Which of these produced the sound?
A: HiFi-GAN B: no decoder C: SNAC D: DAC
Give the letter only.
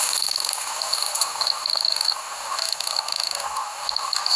D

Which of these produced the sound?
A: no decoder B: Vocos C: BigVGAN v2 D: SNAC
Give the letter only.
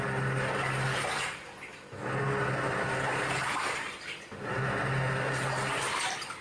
C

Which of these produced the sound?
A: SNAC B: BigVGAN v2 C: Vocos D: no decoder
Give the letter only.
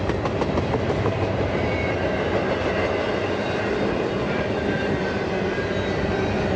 D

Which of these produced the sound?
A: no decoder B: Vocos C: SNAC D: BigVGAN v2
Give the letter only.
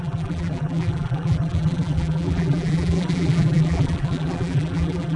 D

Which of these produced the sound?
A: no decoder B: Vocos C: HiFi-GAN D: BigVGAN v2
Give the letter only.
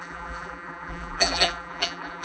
D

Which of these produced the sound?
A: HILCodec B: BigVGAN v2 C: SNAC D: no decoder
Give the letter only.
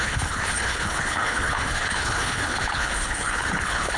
A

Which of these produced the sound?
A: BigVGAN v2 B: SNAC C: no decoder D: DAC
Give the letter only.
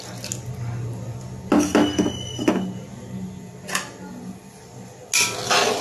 C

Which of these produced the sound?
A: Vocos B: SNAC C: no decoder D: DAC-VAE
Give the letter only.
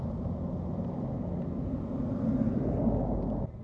C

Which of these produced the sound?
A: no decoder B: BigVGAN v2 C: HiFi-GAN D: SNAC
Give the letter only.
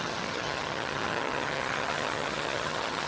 C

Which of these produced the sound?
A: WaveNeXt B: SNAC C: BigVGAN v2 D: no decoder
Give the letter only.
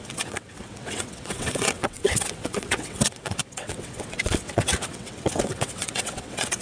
A